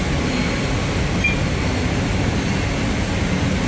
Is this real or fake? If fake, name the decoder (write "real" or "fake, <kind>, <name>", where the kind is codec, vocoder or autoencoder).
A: real